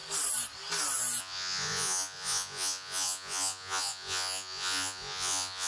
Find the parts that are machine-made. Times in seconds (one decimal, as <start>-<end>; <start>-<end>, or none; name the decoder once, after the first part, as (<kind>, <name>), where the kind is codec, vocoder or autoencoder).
1.2-5.7 (vocoder, Vocos)